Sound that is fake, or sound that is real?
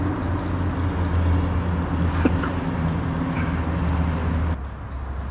real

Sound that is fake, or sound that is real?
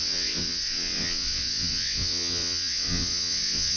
fake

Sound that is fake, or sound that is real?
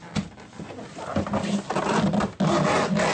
real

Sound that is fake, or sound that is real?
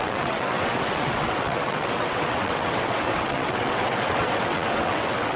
fake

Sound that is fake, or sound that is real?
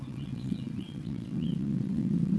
fake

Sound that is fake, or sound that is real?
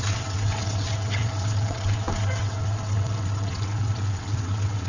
fake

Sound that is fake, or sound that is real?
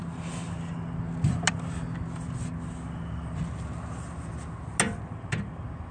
real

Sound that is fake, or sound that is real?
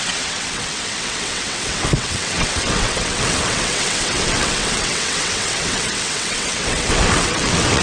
fake